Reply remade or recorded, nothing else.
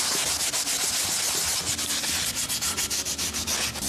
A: recorded